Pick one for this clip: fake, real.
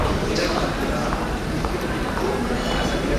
fake